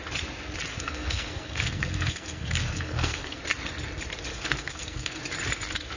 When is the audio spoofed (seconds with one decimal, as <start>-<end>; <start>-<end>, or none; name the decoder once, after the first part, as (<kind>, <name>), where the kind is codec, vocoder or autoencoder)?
0.7-3.4 (codec, SNAC); 4.3-5.2